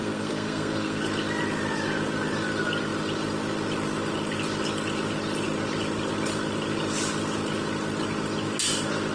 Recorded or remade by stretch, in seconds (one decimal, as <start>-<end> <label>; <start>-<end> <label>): 0.0-1.0 remade; 1.0-9.1 recorded